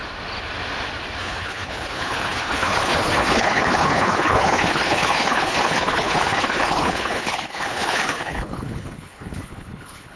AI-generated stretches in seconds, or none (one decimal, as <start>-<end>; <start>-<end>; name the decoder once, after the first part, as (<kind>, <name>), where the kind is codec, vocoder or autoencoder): 1.2-10.2 (codec, HILCodec)